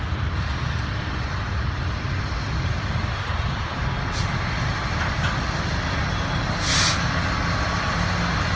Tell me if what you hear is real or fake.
real